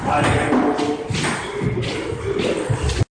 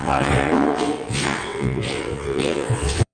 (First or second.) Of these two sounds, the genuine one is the first